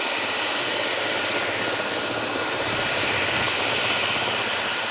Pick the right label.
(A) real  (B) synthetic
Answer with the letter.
A